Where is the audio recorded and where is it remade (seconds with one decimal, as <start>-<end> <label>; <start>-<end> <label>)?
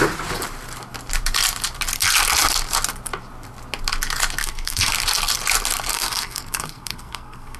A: 0.0-4.4 recorded; 4.4-4.9 remade; 4.9-5.9 recorded; 5.9-7.6 remade